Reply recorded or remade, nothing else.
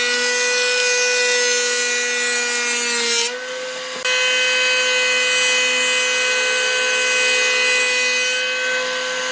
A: recorded